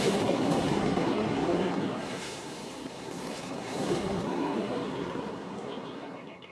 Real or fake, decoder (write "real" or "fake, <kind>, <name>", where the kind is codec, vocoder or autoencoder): fake, codec, SNAC